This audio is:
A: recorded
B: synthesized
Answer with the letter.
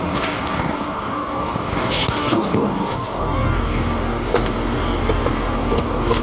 B